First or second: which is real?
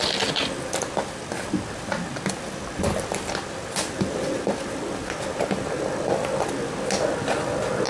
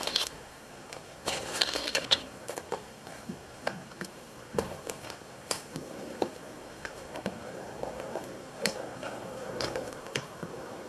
first